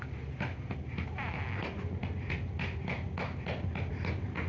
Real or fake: real